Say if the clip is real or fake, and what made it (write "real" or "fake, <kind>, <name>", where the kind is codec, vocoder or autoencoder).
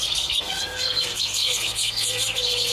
fake, codec, SNAC